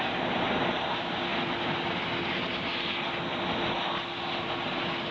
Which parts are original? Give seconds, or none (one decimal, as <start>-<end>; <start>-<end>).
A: 0.0-5.1